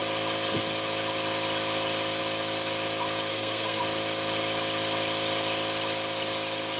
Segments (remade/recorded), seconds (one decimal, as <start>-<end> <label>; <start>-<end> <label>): 0.0-3.3 recorded; 3.3-3.8 remade; 3.8-6.8 recorded